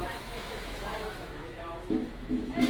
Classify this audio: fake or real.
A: fake